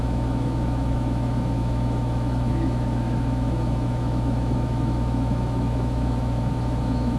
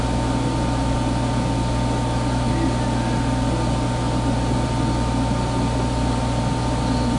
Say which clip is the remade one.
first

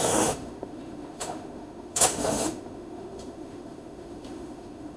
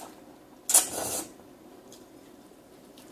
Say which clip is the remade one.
first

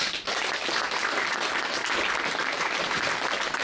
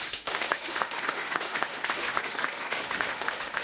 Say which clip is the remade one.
second